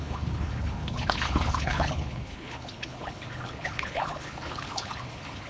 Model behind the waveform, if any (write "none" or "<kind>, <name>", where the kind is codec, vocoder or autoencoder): codec, HILCodec